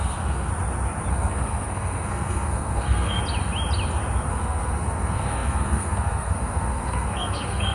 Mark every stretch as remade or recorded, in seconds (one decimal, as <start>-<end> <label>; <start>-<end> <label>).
0.0-0.5 remade; 0.5-1.1 recorded; 1.1-3.2 remade; 3.2-4.3 recorded; 4.3-7.7 remade